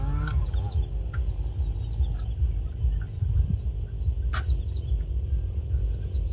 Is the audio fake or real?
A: real